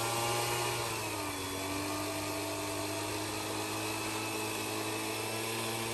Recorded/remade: recorded